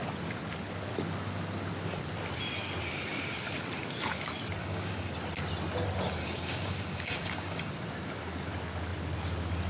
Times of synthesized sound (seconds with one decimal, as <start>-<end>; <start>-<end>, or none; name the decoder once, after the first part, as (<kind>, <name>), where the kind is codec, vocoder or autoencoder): 4.6-5.1 (codec, DAC); 6.2-7.7